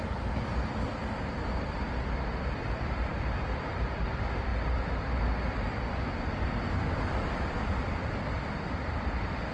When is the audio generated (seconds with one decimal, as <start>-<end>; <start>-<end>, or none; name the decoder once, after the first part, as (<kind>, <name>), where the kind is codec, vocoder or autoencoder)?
0.0-4.5 (vocoder, BigVGAN v2); 6.6-9.5